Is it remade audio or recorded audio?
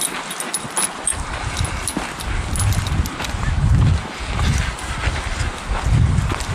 recorded